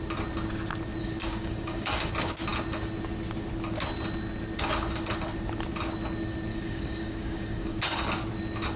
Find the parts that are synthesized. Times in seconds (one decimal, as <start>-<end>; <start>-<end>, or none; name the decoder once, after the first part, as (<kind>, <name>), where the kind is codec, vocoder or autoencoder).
1.0-2.1 (codec, DAC); 6.5-7.8